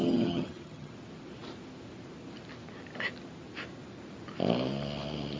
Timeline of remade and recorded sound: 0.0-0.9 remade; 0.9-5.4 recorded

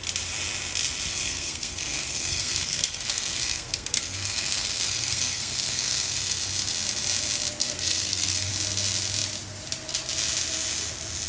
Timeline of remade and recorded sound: 0.0-1.1 recorded; 1.1-6.4 remade; 6.4-7.6 recorded; 7.6-8.5 remade; 8.5-11.3 recorded

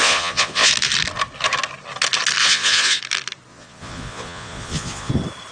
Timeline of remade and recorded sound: 0.0-0.7 remade; 0.7-2.4 recorded; 2.4-3.0 remade; 3.0-3.5 recorded; 3.5-5.1 remade; 5.1-5.5 recorded

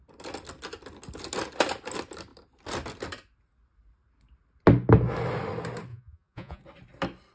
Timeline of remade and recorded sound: 0.0-5.9 recorded; 5.9-6.6 remade; 6.6-7.3 recorded

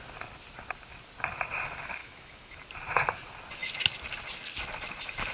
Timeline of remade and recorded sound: 0.0-2.0 recorded; 2.0-2.7 remade; 2.7-5.3 recorded